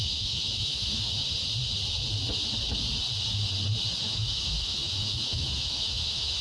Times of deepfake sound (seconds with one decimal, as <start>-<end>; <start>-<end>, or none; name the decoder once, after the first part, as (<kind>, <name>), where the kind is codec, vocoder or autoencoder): 0.0-1.2 (autoencoder, DAC-VAE); 4.0-6.4